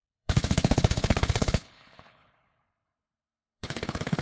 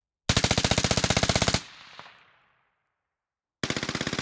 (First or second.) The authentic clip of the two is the second